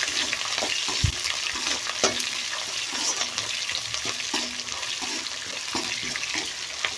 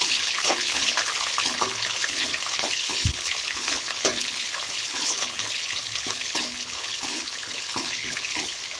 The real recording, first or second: first